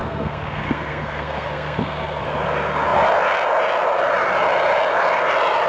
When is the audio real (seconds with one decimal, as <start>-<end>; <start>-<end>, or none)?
2.2-5.7